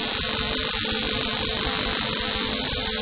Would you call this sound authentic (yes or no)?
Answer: yes